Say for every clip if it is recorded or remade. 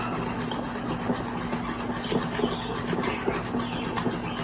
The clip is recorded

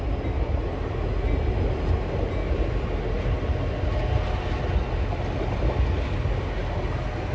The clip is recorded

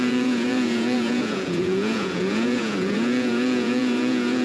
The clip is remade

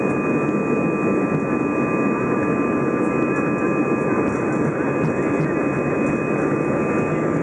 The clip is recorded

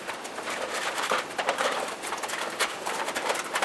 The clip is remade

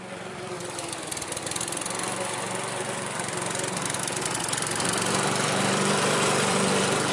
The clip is remade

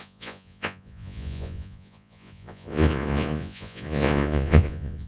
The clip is remade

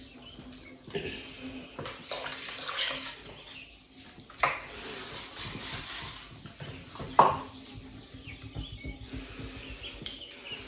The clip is recorded